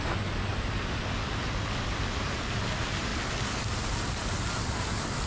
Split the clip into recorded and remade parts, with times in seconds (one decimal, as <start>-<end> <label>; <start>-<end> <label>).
0.0-5.3 recorded